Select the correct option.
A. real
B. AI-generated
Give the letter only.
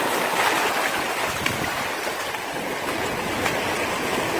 A